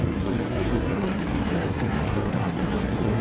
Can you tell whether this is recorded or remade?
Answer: remade